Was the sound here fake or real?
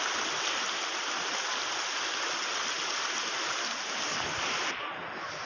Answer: real